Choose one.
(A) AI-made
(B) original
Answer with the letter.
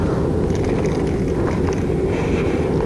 B